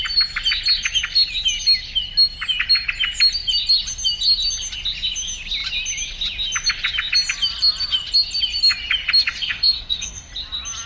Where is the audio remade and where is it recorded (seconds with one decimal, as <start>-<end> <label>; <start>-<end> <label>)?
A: 0.0-9.4 recorded; 9.4-10.3 remade; 10.3-10.9 recorded